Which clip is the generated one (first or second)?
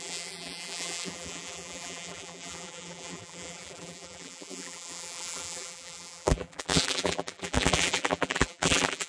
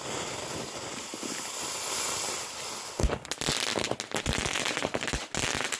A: first